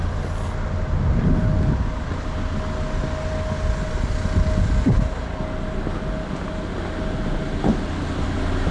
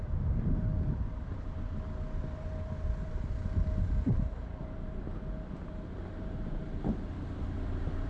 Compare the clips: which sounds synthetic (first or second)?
second